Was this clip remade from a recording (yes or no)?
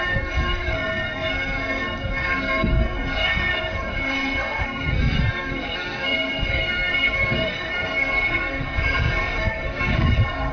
yes